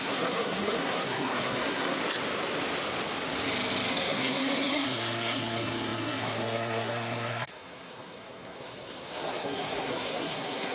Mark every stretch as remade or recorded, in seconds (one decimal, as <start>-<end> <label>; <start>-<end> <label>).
0.0-2.0 remade; 2.0-3.9 recorded; 3.9-10.7 remade